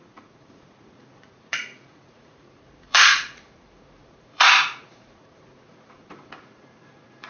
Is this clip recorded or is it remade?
remade